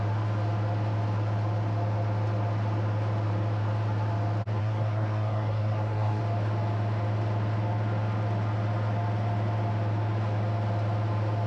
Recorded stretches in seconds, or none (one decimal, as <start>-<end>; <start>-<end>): 0.0-4.6; 6.2-11.5